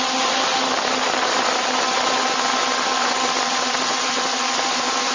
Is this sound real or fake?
real